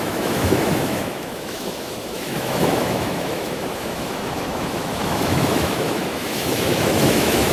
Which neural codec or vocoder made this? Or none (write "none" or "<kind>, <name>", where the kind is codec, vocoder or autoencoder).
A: autoencoder, DAC-VAE